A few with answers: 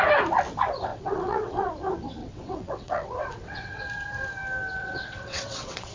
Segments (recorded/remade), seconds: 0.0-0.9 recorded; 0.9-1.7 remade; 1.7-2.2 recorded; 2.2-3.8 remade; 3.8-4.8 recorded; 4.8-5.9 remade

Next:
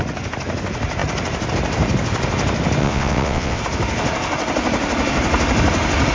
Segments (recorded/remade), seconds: 0.0-2.8 recorded; 2.8-3.6 remade; 3.6-6.1 recorded

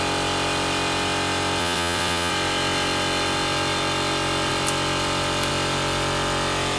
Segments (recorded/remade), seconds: 0.0-1.6 recorded; 1.6-2.3 remade; 2.3-6.8 recorded

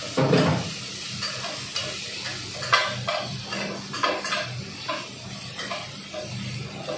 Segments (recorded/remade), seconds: 0.0-7.0 recorded